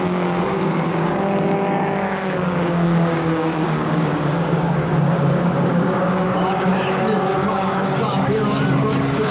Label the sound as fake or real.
fake